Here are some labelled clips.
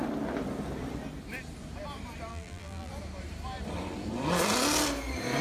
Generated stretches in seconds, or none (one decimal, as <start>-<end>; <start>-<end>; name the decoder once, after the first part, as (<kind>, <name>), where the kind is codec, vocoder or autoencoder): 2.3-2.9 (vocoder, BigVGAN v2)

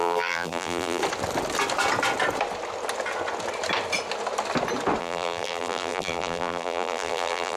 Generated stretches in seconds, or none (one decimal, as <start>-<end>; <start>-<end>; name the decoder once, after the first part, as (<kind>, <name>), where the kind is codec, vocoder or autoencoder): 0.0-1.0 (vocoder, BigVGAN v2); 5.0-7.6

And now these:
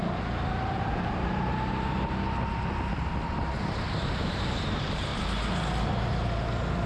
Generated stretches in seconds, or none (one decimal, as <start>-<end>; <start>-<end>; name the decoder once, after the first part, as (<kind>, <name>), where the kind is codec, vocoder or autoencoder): 0.0-1.5 (vocoder, BigVGAN v2); 4.6-5.1